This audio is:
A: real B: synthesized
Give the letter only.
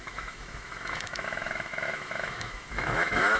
B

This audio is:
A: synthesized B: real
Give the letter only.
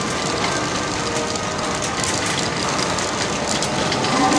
B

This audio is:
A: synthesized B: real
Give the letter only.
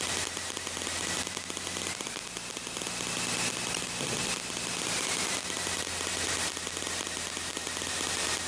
B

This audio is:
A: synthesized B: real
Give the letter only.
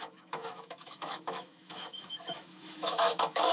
A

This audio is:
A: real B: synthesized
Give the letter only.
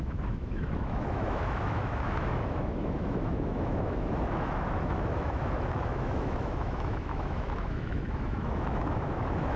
B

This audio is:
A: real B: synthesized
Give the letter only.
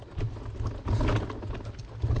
A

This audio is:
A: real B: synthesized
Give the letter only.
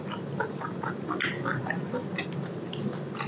A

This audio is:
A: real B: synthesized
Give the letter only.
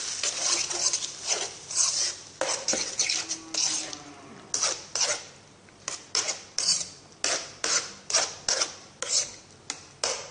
A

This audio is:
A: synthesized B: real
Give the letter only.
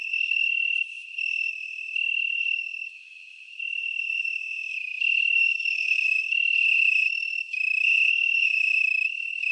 A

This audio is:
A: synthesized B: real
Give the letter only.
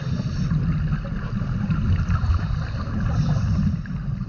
B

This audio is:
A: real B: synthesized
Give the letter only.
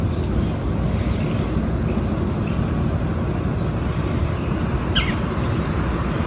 A